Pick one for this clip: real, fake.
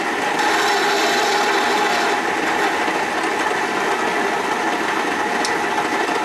real